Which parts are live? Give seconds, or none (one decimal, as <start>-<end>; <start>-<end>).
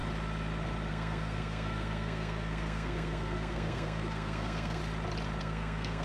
0.0-0.9; 4.8-5.4